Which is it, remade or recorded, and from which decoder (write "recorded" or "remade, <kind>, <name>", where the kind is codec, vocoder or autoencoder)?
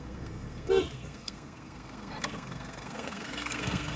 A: remade, codec, SNAC